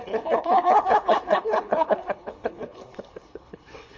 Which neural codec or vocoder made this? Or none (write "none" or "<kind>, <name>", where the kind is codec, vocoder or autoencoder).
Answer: codec, HILCodec